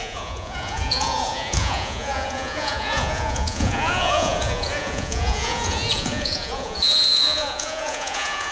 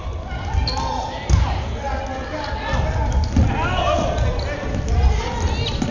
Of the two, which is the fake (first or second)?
first